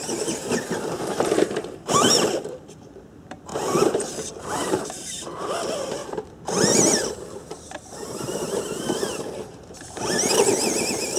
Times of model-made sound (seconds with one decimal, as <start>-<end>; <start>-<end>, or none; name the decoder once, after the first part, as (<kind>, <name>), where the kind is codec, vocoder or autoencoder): 0.0-3.5 (vocoder, BigVGAN v2); 4.1-6.0; 7.9-11.2